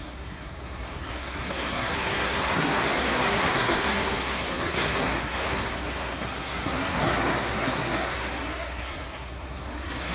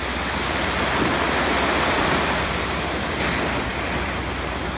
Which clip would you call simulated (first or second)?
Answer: first